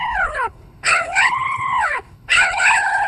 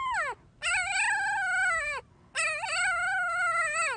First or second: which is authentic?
second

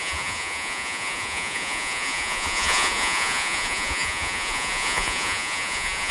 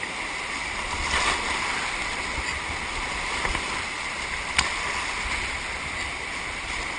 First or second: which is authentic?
second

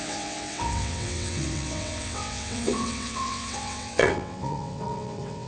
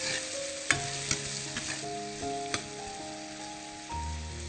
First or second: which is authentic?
second